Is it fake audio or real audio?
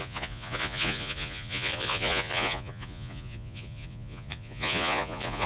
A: fake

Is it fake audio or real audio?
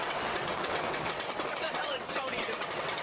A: fake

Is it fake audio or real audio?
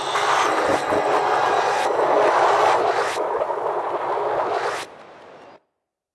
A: real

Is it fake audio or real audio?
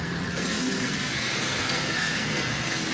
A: fake